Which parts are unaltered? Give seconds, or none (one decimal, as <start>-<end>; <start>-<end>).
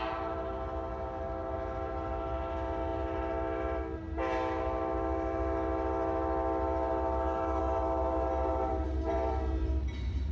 0.0-10.3